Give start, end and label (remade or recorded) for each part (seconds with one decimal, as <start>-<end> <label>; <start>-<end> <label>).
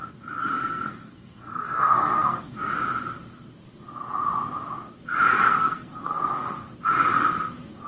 0.0-0.4 recorded; 0.4-2.7 remade; 2.7-5.3 recorded; 5.3-6.7 remade; 6.7-7.9 recorded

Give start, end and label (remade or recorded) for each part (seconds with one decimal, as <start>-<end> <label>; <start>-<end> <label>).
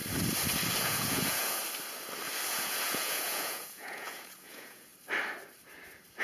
0.0-0.8 recorded; 0.8-1.6 remade; 1.6-2.5 recorded; 2.5-4.9 remade; 4.9-6.2 recorded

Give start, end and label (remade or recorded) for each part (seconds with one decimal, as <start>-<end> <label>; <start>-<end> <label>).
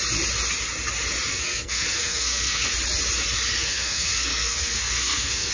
0.0-1.3 recorded; 1.3-2.7 remade; 2.7-3.6 recorded; 3.6-5.5 remade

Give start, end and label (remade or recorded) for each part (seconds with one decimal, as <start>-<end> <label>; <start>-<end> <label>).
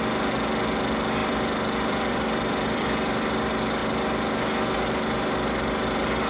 0.0-1.2 recorded; 1.2-3.1 remade; 3.1-6.3 recorded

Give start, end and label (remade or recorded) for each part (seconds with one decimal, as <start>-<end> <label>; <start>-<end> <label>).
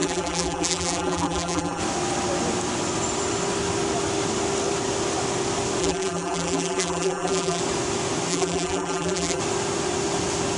0.0-1.8 remade; 1.8-5.8 recorded; 5.8-7.6 remade; 7.6-8.3 recorded; 8.3-9.4 remade; 9.4-10.6 recorded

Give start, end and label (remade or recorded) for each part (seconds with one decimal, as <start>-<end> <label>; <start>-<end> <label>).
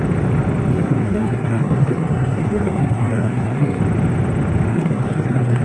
0.0-0.7 recorded; 0.7-3.8 remade; 3.8-4.7 recorded; 4.7-5.6 remade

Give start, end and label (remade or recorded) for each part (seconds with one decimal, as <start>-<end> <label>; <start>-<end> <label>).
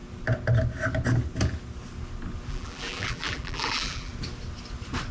0.0-2.5 recorded; 2.5-4.1 remade; 4.1-5.1 recorded